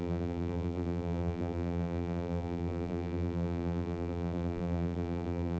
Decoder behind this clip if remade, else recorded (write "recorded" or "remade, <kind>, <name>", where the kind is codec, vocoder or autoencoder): remade, vocoder, BigVGAN v2